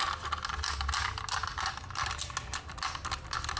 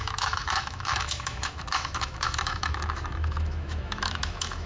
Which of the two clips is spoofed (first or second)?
second